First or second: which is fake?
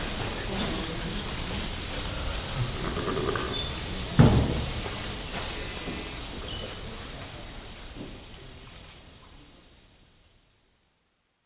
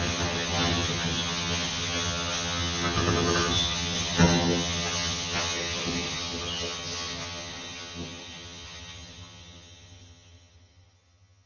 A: second